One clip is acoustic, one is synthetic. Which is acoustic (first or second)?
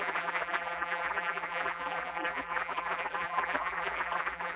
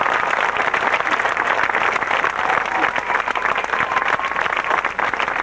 second